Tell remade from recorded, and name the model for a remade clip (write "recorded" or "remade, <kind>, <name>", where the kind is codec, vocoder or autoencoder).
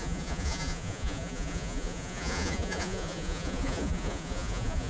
remade, vocoder, Vocos